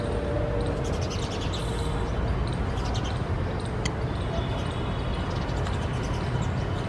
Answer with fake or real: real